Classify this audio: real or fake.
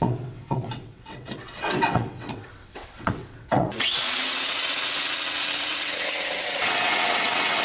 fake